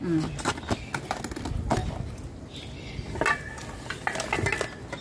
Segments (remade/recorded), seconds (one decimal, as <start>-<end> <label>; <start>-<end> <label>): 0.0-5.0 recorded